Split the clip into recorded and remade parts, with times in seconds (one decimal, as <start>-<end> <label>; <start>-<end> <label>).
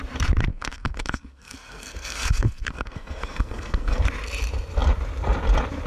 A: 0.0-0.5 recorded; 0.5-4.0 remade; 4.0-5.9 recorded